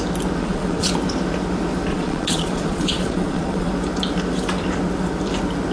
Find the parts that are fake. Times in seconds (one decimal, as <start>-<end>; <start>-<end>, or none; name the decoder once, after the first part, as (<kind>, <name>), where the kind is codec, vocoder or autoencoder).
0.4-0.9 (vocoder, Vocos); 1.9-3.7